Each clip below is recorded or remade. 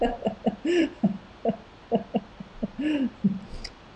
recorded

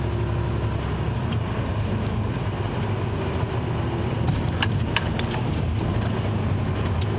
recorded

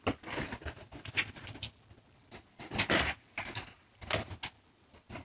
recorded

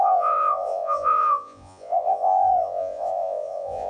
remade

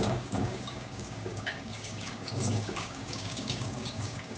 remade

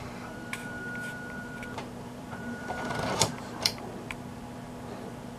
remade